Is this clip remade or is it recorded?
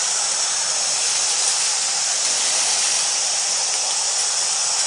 recorded